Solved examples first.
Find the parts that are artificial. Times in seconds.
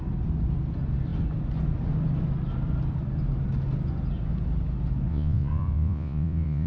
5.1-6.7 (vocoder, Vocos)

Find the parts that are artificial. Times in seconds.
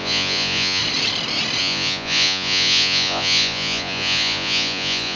0.0-0.8 (vocoder, Vocos); 1.6-5.2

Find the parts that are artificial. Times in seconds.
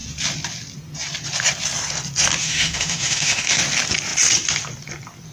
2.4-3.6 (autoencoder, DAC-VAE)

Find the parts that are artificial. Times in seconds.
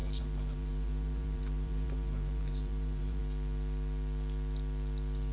0.0-3.2 (vocoder, BigVGAN v2)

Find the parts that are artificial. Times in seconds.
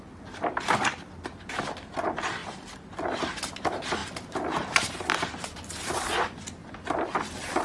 2.4-2.9 (vocoder, BigVGAN v2); 4.0-4.9; 6.6-7.6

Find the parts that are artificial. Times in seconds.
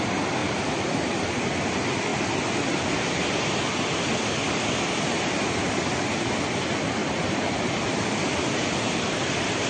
0.4-1.5 (vocoder, BigVGAN v2); 7.0-9.7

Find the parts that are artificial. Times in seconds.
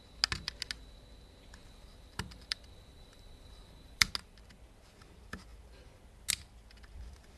1.6-4.1 (vocoder, BigVGAN v2)